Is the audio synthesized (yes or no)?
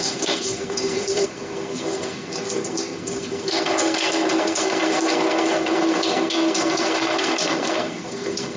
yes